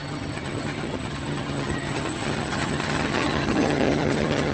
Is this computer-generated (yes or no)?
yes